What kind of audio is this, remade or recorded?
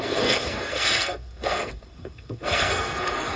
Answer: remade